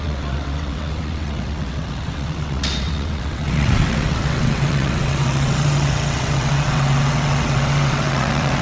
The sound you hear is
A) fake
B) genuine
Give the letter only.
A